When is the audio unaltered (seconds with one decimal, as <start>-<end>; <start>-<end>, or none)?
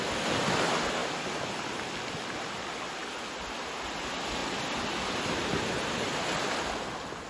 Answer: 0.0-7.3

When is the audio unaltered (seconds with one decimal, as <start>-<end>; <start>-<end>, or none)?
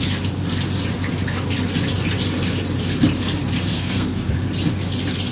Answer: 0.0-3.7; 4.3-5.3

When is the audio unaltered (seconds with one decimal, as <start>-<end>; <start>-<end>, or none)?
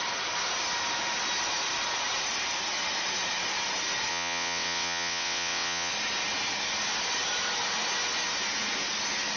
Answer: 0.0-4.1; 5.9-9.4